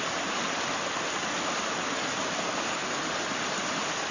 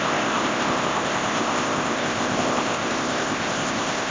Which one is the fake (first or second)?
second